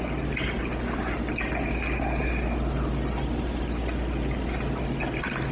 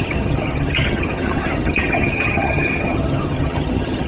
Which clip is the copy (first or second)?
second